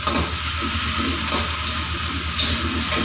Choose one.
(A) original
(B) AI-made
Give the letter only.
A